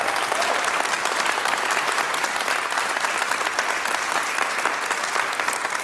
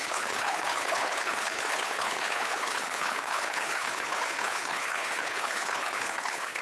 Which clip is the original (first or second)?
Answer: first